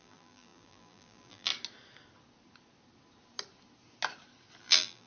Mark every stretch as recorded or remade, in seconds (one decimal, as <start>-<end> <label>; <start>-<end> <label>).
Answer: 0.0-1.5 remade; 1.5-4.6 recorded; 4.6-5.1 remade